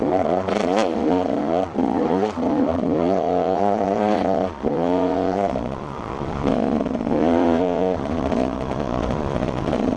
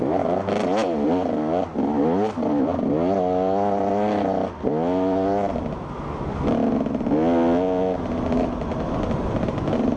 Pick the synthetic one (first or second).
first